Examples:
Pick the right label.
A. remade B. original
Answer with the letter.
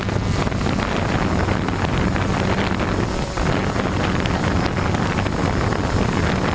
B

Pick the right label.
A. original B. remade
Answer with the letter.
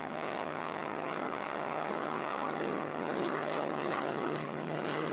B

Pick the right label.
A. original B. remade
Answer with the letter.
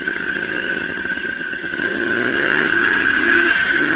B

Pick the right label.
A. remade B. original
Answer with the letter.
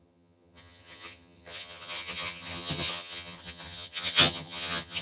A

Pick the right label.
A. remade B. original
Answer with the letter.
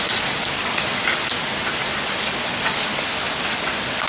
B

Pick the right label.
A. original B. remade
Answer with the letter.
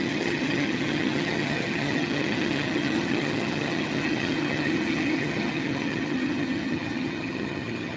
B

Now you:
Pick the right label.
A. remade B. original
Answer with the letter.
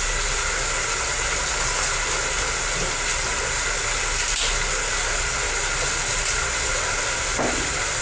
B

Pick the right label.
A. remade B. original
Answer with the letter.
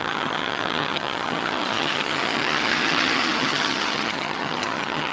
A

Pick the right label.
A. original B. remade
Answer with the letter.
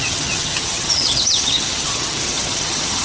B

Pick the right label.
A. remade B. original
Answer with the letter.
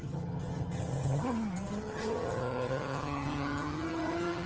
A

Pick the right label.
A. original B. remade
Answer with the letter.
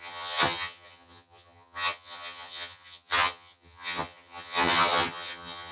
B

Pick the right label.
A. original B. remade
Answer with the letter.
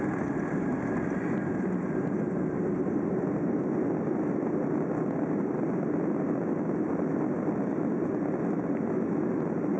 A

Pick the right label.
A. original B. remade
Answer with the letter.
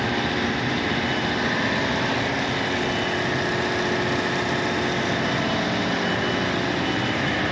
A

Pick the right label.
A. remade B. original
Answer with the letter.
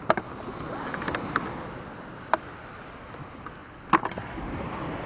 B